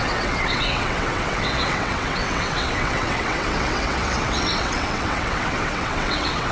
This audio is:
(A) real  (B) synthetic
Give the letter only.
B